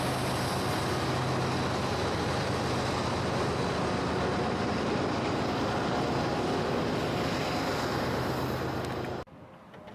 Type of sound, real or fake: real